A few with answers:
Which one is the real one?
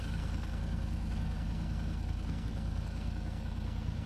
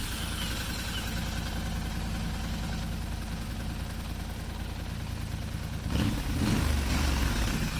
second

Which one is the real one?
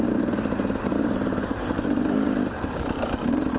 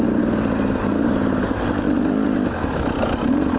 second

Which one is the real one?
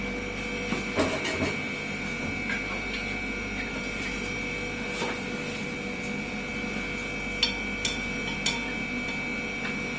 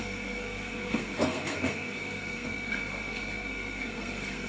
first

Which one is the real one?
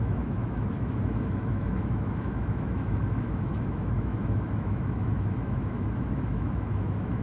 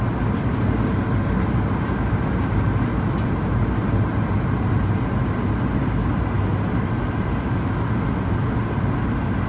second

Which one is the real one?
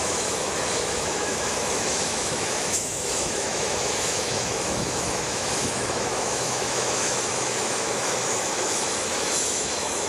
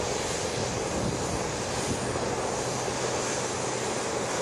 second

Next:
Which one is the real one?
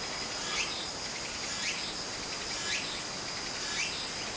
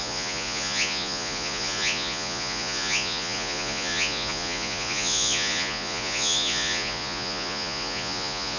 first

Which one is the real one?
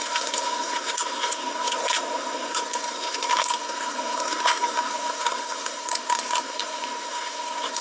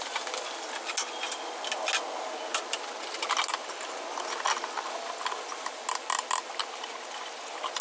second